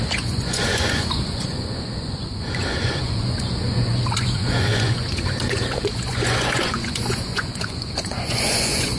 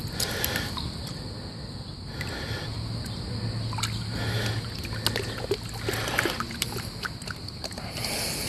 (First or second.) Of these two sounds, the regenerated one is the first